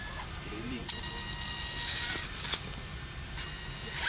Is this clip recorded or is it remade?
recorded